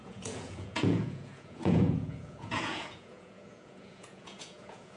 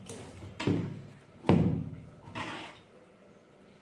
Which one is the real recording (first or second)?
second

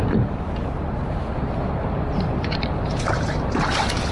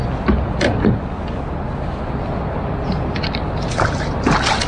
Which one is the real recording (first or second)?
second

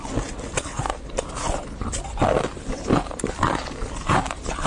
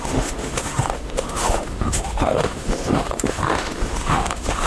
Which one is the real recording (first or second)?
first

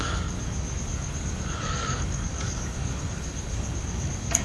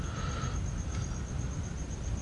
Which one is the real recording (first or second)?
second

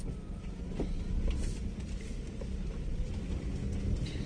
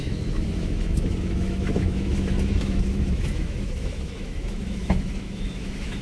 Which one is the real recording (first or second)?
first